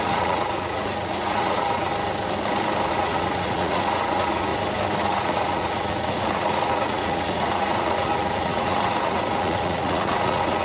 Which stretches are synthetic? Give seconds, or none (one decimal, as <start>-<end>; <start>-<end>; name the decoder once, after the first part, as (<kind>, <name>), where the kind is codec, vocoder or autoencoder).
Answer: 0.0-1.9 (vocoder, Vocos); 2.9-4.5; 5.0-10.6